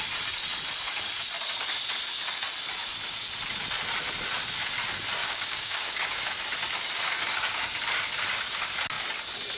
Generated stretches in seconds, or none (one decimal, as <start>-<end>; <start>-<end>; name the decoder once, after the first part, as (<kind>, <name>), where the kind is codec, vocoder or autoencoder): 5.2-6.3 (codec, DAC)